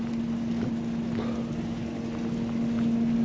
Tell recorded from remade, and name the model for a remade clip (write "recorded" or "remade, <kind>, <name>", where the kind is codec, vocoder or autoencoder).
recorded